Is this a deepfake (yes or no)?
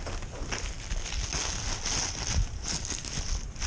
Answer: no